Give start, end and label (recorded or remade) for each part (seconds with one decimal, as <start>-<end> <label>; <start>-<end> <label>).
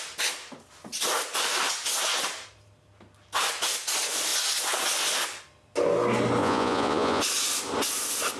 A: 0.0-6.4 recorded; 6.4-7.2 remade; 7.2-8.4 recorded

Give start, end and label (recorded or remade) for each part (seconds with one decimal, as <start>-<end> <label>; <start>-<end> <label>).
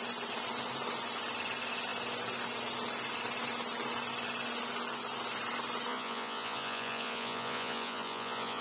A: 0.0-5.9 recorded; 5.9-8.6 remade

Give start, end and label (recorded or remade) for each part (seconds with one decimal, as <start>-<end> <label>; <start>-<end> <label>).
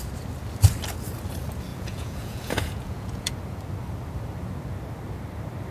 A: 0.0-1.7 recorded; 1.7-3.3 remade; 3.3-5.7 recorded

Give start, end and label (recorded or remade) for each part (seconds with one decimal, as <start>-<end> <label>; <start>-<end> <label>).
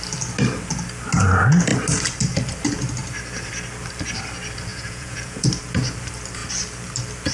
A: 0.0-4.7 recorded; 4.7-5.5 remade; 5.5-7.3 recorded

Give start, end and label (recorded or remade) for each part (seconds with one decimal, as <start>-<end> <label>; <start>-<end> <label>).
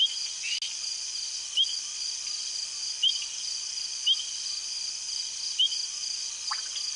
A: 0.0-7.0 recorded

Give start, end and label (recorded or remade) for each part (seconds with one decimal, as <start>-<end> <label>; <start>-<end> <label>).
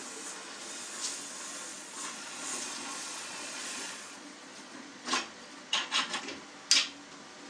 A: 0.0-1.7 recorded; 1.7-6.2 remade; 6.2-7.5 recorded